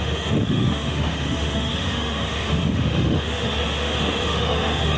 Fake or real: fake